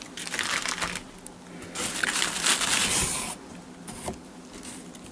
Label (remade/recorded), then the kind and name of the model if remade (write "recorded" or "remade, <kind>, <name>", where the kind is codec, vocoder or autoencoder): recorded